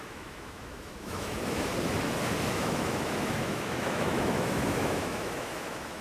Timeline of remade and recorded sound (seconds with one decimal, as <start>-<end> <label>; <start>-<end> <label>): 0.0-1.7 remade; 1.7-2.5 recorded; 2.5-6.0 remade